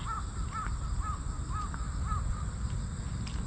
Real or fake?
real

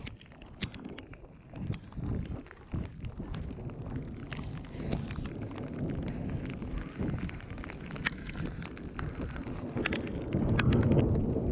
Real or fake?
real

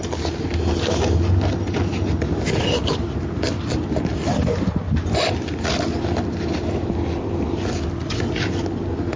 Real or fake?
real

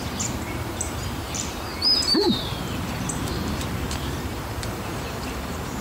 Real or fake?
fake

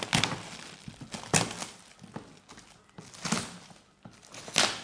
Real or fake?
real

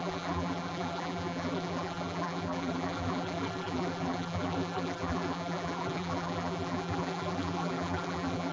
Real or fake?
fake